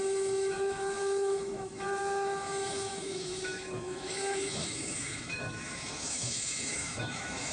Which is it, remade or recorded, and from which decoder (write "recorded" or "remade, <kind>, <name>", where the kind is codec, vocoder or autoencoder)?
remade, autoencoder, DAC-VAE